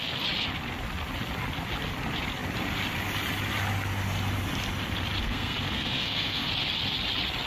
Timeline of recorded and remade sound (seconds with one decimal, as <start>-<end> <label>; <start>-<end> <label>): 0.0-5.2 recorded; 5.2-6.5 remade; 6.5-7.5 recorded